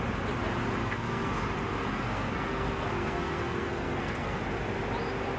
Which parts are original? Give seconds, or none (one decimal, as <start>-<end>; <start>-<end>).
0.0-0.8; 1.4-1.9; 4.4-5.4